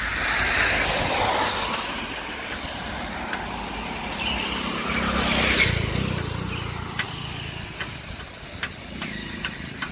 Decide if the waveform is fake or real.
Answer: real